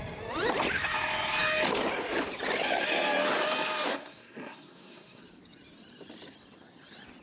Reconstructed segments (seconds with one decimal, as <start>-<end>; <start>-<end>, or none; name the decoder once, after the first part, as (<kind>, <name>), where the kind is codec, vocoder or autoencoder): 3.9-5.2 (codec, SNAC)